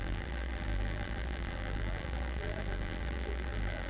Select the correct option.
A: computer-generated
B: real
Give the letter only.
A